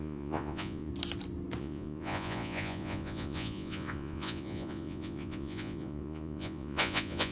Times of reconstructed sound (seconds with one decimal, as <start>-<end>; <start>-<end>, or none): 0.0-0.9; 1.6-7.3